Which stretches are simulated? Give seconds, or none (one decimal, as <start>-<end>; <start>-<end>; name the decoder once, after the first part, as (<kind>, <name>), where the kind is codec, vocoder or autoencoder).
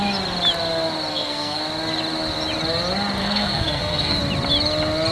1.1-1.6 (codec, SNAC); 3.2-4.2